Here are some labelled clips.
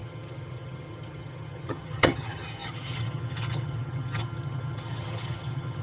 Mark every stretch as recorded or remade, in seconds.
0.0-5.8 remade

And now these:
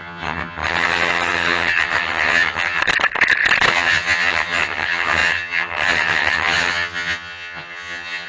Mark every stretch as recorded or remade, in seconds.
0.0-2.8 remade; 2.8-3.7 recorded; 3.7-8.3 remade

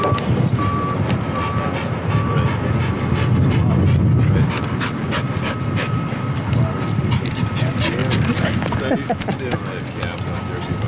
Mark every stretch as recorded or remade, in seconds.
0.0-10.9 recorded